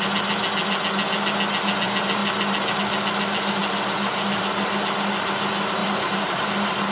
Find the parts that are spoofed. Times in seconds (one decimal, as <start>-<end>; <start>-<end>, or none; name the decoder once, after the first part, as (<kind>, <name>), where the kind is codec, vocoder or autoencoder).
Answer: 5.8-6.4 (vocoder, BigVGAN v2)